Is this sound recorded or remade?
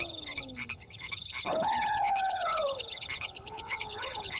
remade